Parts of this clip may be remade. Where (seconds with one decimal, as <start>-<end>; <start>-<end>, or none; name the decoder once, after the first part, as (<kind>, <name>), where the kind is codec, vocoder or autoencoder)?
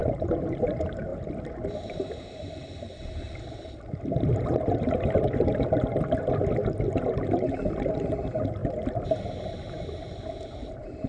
0.0-0.6 (vocoder, BigVGAN v2)